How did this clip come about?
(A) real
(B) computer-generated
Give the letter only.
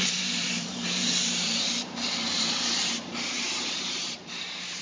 B